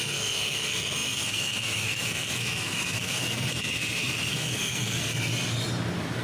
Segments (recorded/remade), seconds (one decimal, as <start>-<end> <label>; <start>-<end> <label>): 0.0-5.3 remade; 5.3-6.2 recorded